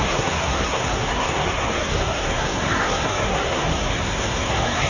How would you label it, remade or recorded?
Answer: remade